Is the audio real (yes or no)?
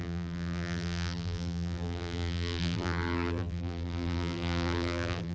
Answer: no